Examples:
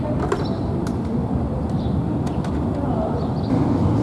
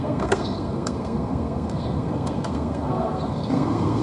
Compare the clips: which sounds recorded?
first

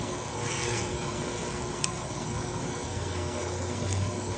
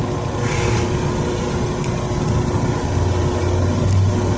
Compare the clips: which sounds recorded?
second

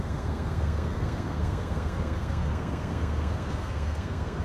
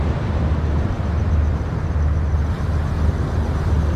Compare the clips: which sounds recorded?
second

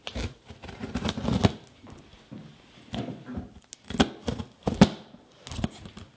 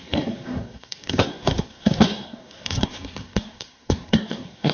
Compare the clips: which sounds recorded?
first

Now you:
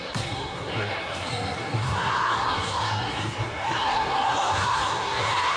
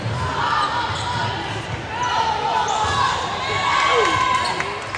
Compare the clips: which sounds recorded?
second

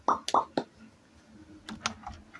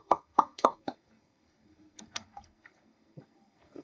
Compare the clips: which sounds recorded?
first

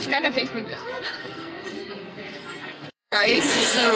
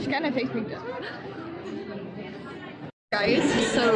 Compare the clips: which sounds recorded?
second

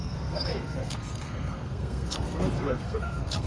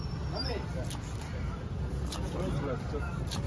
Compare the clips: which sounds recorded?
second